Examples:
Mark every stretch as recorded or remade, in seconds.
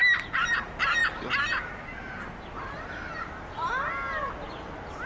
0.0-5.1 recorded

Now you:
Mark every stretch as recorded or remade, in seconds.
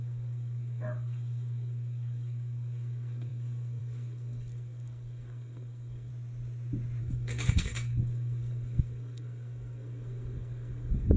0.0-6.1 remade; 6.1-7.0 recorded; 7.0-11.2 remade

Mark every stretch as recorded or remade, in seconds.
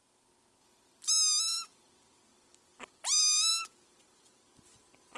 0.0-5.2 recorded